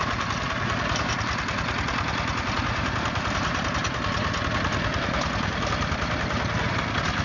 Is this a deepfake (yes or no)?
no